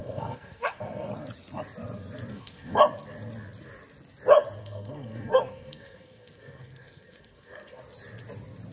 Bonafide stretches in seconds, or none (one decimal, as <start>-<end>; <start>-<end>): 1.1-2.3; 2.8-4.6; 7.8-8.7